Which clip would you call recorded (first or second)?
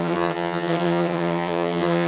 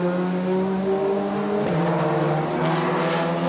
second